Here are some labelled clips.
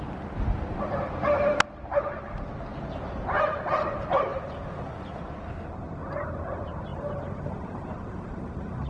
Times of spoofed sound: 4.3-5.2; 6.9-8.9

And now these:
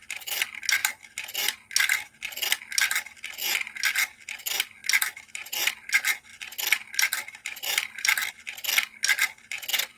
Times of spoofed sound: 4.8-5.7; 6.3-8.3

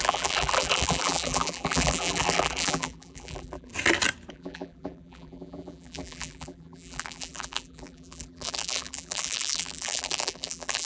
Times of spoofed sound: 0.0-3.7; 4.3-10.9